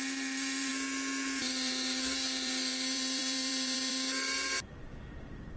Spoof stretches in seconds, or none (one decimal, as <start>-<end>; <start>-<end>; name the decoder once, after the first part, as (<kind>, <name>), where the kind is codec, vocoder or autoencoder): 0.0-0.7 (vocoder, BigVGAN v2); 1.4-5.6